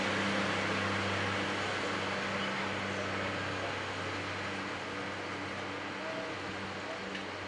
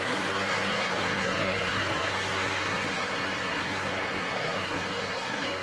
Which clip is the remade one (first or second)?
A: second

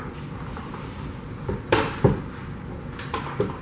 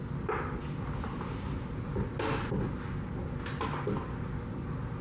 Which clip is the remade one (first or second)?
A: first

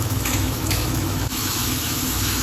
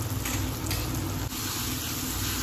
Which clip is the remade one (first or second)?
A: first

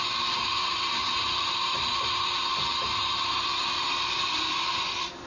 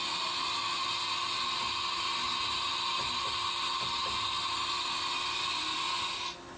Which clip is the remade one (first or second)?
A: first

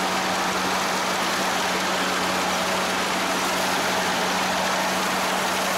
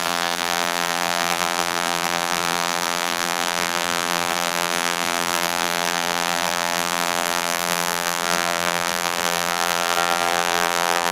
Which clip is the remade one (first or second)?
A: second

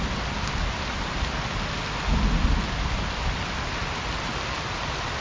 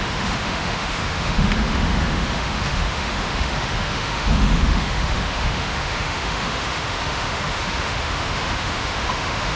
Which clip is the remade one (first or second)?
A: second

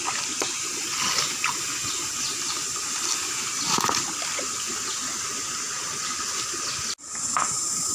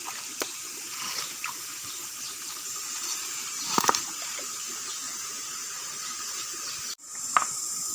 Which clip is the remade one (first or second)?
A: second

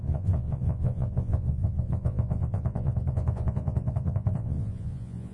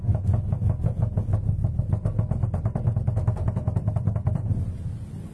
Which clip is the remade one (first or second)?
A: first